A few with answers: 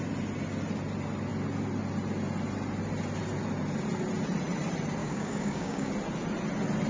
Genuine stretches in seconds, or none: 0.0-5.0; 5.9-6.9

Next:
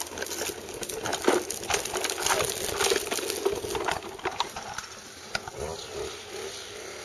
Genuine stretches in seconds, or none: 0.0-7.0

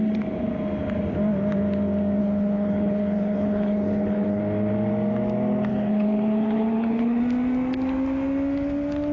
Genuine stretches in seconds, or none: 0.0-2.2; 4.4-5.7; 7.2-9.1